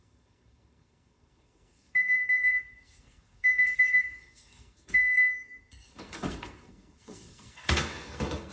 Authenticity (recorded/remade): remade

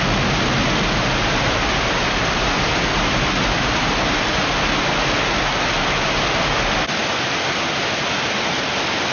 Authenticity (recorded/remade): recorded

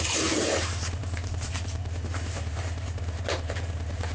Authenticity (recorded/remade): remade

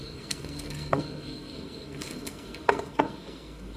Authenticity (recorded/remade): remade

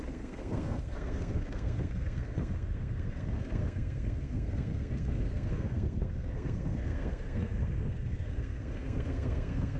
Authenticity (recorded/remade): remade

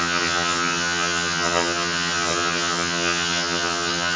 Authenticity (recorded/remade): remade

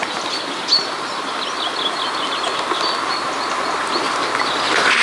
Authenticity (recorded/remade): recorded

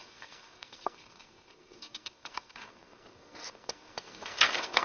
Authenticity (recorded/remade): remade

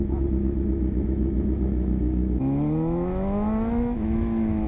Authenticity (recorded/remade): remade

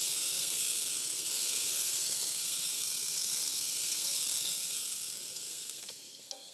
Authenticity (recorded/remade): remade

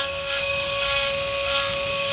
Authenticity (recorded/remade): remade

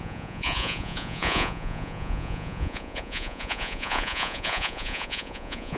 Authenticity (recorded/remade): remade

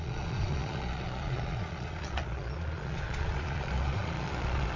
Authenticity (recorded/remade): remade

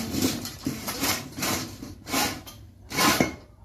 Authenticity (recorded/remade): remade